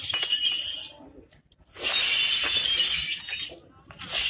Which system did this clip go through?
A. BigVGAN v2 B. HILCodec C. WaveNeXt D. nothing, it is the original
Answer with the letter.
D